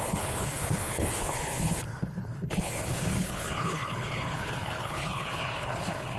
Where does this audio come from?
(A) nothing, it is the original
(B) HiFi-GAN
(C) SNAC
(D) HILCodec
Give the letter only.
D